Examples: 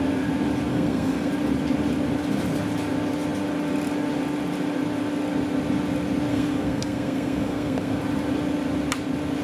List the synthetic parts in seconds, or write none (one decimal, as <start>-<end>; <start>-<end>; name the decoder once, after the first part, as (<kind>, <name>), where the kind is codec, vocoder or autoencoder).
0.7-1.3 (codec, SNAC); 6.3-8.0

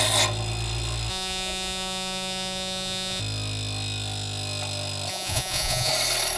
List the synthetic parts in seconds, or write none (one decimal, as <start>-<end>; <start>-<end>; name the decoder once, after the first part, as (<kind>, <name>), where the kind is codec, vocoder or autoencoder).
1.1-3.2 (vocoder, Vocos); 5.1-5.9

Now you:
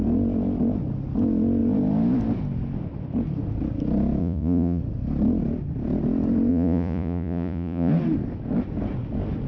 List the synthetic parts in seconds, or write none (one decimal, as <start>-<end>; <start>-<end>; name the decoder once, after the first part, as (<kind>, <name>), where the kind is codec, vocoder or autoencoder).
4.2-4.8 (vocoder, Vocos); 6.5-7.9

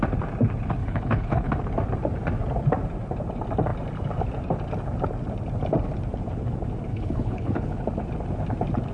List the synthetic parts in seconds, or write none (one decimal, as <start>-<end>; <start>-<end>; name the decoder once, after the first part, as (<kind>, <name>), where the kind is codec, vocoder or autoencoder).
0.8-1.5 (codec, HILCodec); 6.9-7.8